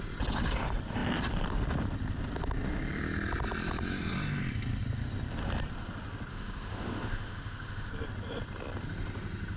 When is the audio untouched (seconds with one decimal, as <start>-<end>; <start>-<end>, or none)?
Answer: 0.0-6.3; 7.9-9.6